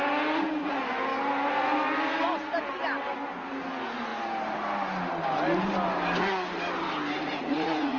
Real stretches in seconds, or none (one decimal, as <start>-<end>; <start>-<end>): 0.0-7.4